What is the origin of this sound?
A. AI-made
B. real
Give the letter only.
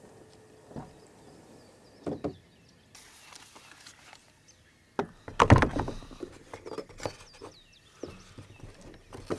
B